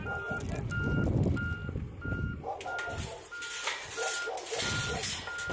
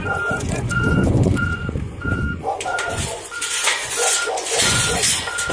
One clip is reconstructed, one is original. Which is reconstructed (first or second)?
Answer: second